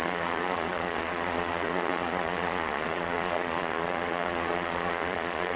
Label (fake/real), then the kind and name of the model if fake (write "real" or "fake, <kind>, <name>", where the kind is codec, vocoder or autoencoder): fake, vocoder, Vocos